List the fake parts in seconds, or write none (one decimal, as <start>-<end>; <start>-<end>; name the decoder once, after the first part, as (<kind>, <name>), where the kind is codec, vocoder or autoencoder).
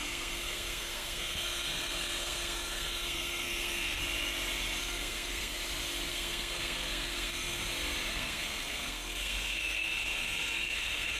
0.0-4.0 (codec, SNAC); 4.8-5.6; 6.1-7.6; 8.1-11.2